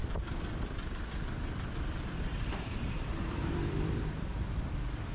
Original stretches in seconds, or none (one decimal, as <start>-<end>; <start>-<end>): none